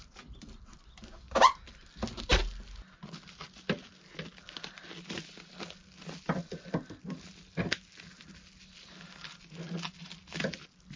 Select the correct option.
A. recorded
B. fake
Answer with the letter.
A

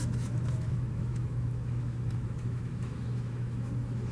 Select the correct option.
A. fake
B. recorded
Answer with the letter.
A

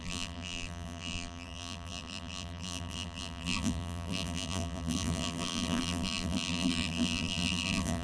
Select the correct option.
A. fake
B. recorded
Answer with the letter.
A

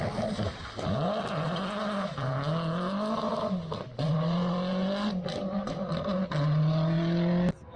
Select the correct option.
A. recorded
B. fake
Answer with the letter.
A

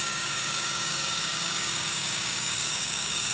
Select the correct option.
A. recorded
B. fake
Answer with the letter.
B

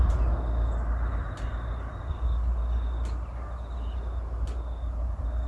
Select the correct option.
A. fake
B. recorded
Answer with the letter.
B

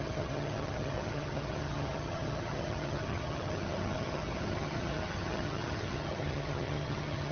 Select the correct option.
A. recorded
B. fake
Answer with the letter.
B